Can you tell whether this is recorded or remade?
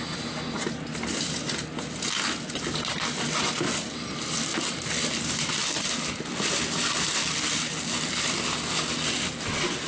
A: recorded